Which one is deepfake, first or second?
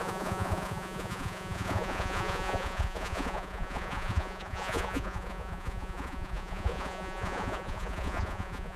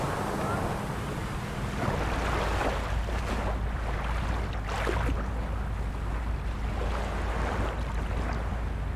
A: first